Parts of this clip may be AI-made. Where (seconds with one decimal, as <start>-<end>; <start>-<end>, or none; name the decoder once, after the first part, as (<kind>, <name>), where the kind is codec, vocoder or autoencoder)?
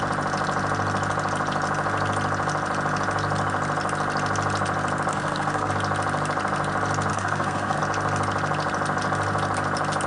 5.1-5.7 (codec, SNAC); 7.1-7.8